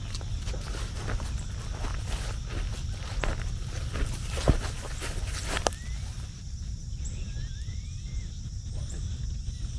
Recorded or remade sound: recorded